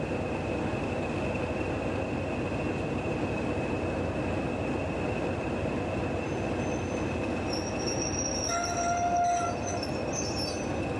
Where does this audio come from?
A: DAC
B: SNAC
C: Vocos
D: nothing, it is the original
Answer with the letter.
D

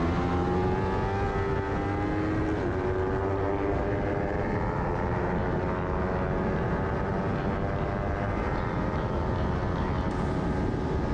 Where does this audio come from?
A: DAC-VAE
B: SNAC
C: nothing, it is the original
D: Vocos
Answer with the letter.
C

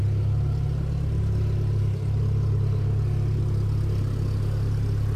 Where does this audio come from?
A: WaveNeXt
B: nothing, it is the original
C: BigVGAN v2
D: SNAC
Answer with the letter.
B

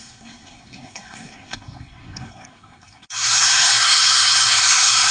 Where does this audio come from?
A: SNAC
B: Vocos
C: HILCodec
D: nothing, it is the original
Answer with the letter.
A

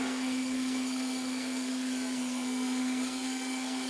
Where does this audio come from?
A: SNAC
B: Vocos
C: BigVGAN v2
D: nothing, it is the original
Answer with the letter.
A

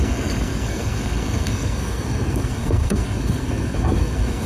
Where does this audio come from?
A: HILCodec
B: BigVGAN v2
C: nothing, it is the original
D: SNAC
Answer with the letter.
D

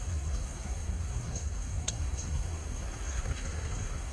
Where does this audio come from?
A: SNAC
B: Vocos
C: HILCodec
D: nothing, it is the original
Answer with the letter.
A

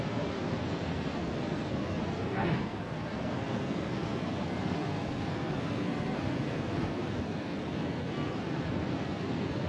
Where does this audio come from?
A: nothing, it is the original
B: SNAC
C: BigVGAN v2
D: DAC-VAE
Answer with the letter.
B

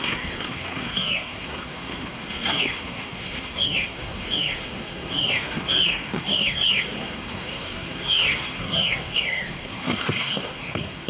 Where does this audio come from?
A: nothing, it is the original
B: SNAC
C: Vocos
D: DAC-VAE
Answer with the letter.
B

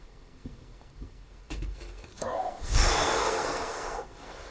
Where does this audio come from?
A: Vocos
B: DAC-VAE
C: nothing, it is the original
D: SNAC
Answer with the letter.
D